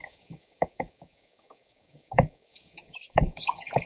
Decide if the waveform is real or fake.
fake